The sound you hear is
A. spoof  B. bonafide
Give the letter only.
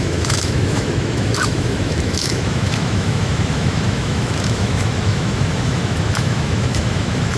A